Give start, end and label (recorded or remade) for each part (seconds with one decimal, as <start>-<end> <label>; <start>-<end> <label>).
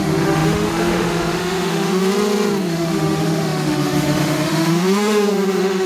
0.0-2.0 remade; 2.0-2.6 recorded; 2.6-5.9 remade